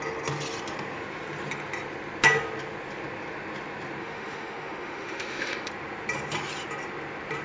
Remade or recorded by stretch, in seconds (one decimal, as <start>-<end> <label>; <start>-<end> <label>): 0.0-4.0 recorded; 4.0-5.7 remade; 5.7-7.4 recorded